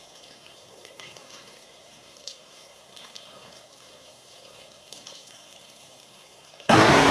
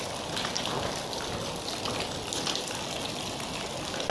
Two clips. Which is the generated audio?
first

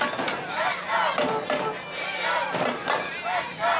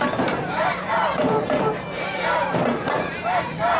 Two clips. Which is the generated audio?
second